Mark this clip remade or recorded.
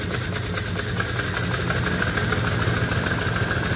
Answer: recorded